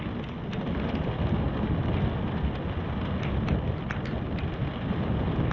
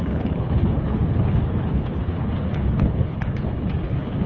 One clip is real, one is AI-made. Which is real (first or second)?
first